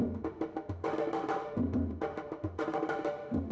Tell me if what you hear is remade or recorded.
remade